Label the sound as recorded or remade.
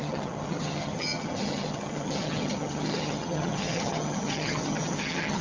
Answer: remade